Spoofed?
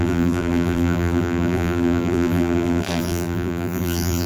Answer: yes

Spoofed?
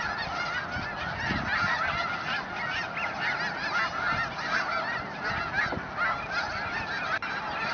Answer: no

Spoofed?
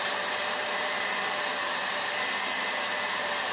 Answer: yes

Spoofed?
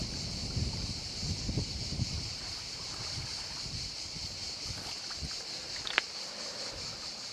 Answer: no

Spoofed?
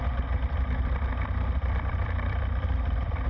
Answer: yes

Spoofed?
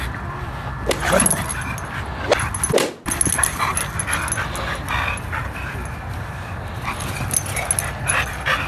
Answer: no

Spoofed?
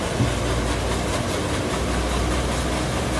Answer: no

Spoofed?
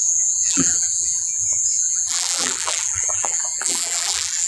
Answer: yes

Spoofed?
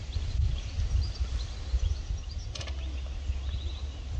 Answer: no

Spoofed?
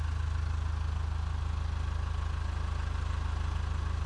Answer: no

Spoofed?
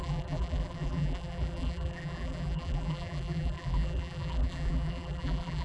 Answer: yes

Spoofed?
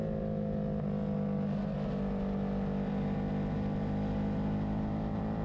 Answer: no